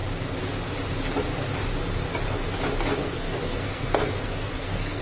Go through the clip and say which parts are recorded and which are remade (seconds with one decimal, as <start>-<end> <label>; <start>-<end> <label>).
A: 0.0-3.0 recorded; 3.0-5.0 remade